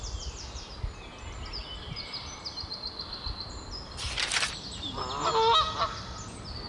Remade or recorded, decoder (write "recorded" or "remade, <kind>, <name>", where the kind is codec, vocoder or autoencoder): recorded